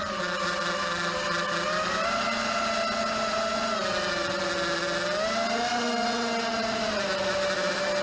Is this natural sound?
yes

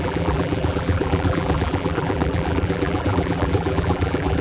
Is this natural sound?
no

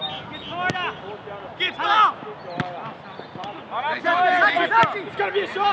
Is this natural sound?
yes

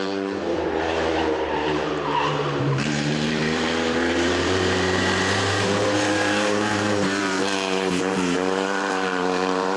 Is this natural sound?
no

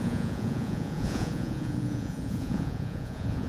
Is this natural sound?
no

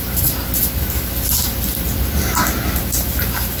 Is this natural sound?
yes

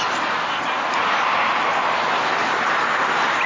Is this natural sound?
yes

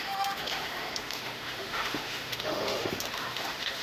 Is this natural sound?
no